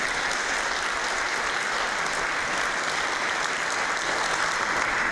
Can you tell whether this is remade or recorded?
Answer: recorded